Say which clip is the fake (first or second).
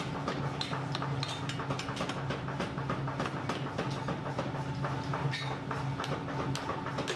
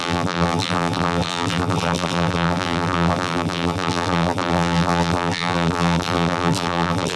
second